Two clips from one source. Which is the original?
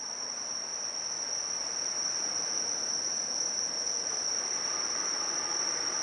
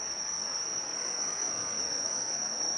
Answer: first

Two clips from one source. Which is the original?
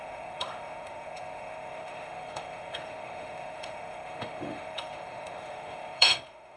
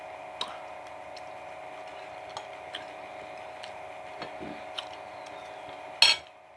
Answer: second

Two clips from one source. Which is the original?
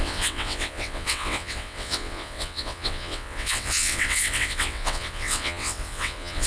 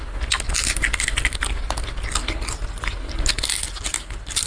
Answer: second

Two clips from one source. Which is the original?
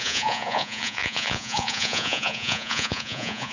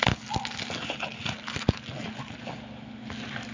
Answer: second